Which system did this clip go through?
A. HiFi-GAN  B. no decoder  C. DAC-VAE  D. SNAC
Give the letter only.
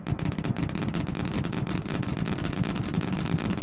B